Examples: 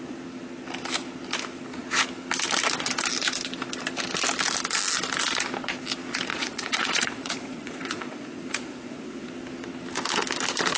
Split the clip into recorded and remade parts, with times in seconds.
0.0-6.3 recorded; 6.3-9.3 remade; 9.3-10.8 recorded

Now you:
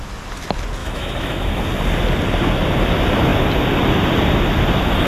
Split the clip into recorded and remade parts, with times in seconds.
0.0-0.8 recorded; 0.8-1.6 remade; 1.6-5.1 recorded

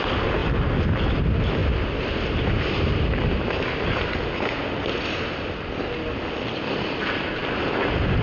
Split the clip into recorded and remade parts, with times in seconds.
0.0-8.2 recorded

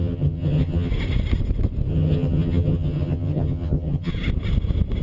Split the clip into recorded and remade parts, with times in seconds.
0.0-0.9 remade; 0.9-1.9 recorded; 1.9-4.1 remade; 4.1-5.0 recorded